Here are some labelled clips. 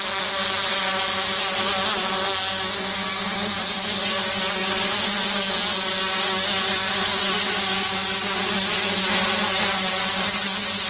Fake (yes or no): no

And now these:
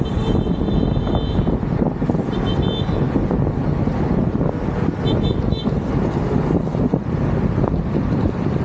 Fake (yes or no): no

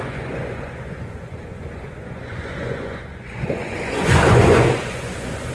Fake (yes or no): yes